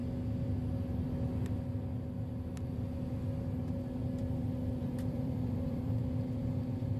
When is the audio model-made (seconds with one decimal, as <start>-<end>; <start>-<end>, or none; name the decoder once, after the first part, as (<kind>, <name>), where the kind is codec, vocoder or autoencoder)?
4.8-6.0 (vocoder, BigVGAN v2)